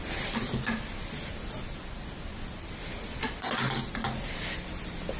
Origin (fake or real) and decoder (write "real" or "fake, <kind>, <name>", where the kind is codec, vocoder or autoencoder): real